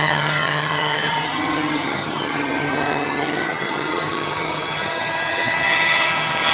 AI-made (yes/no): yes